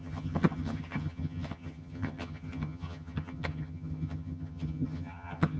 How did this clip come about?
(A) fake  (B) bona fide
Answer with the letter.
A